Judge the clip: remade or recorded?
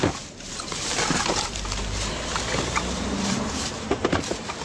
remade